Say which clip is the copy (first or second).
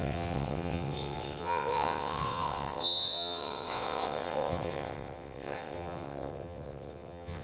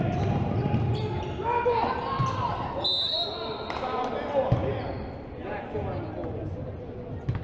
first